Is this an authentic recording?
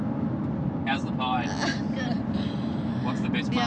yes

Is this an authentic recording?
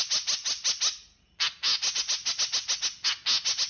yes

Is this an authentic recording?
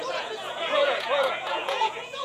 no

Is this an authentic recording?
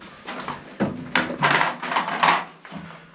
yes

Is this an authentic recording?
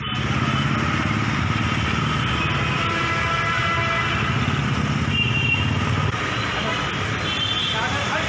yes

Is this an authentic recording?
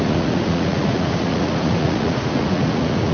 no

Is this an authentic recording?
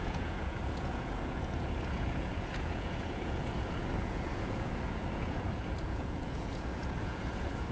no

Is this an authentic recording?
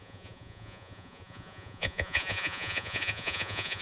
no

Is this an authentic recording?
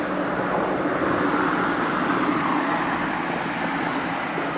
yes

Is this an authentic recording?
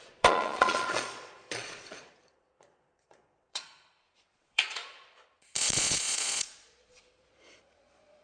no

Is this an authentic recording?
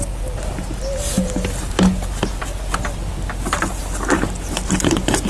yes